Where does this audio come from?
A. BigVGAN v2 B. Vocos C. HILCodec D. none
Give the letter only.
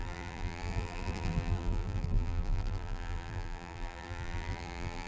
A